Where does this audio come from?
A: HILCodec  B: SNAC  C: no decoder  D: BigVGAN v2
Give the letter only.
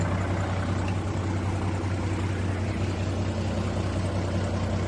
C